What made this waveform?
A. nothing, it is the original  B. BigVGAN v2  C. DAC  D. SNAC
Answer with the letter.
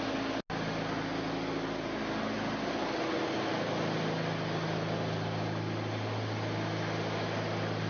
A